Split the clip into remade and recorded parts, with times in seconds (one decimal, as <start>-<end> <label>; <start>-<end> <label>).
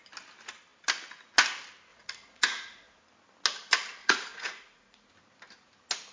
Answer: 0.0-1.9 recorded; 1.9-3.0 remade; 3.0-4.0 recorded; 4.0-5.1 remade; 5.1-6.1 recorded